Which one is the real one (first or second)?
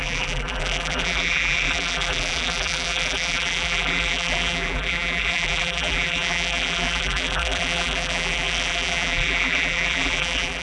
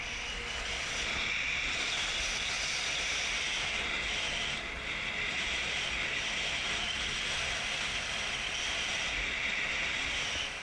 second